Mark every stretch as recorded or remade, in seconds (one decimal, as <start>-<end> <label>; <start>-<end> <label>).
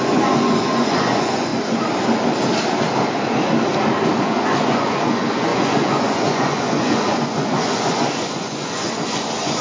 0.0-1.5 remade; 1.5-4.2 recorded; 4.2-9.6 remade